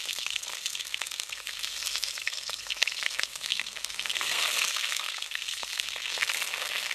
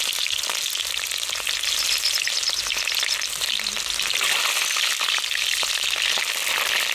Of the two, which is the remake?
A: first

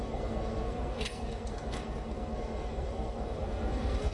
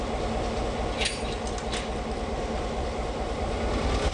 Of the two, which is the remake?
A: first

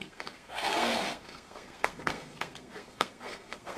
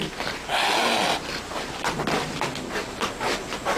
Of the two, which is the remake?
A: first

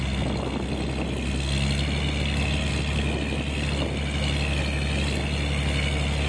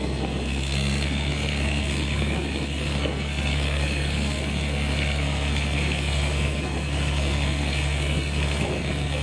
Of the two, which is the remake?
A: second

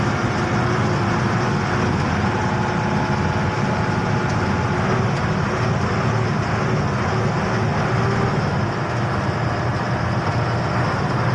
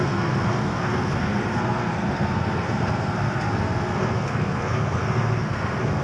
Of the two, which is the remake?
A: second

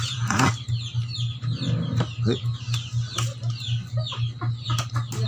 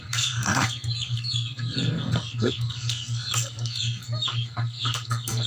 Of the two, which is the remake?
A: second